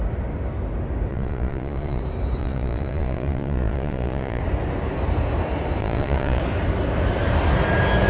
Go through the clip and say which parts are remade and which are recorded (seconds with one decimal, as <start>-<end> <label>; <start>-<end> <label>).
0.0-1.1 recorded; 1.1-2.0 remade; 2.0-2.4 recorded; 2.4-4.4 remade; 4.4-5.8 recorded; 5.8-6.4 remade; 6.4-8.1 recorded